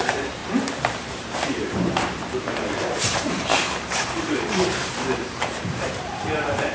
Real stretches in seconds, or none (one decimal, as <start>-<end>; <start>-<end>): 0.4-1.1